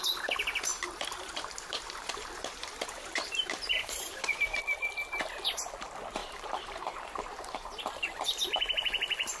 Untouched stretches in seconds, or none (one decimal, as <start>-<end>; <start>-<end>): 0.0-0.7; 4.3-6.2; 7.8-9.4